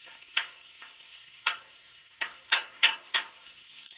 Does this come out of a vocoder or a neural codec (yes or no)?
yes